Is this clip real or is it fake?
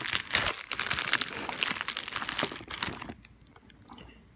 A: real